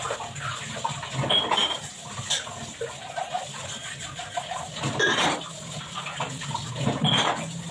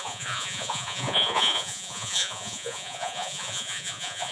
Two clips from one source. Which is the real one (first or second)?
first